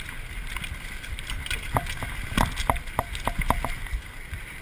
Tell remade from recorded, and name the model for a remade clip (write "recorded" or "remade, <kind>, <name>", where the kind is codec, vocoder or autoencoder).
recorded